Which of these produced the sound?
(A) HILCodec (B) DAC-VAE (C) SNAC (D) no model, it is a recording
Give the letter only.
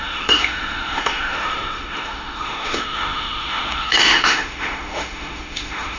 B